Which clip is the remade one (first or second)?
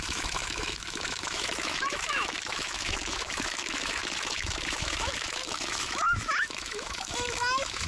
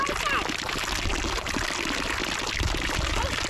first